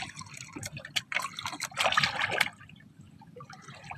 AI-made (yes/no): no